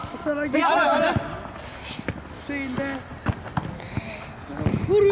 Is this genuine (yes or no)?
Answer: yes